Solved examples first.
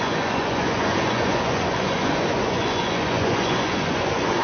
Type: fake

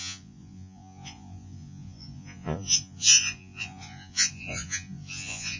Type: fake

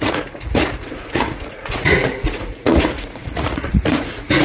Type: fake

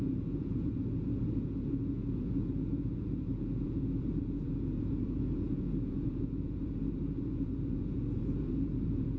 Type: fake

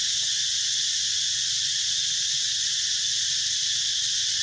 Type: real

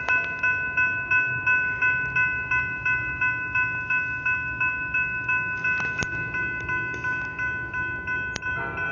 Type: real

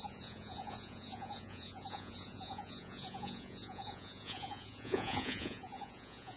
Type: fake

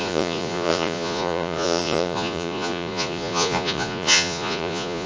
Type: fake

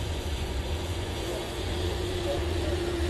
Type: fake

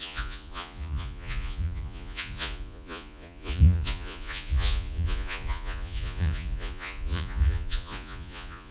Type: fake